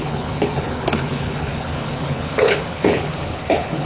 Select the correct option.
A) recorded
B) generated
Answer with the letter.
B